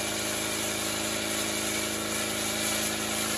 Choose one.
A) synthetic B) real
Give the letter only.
B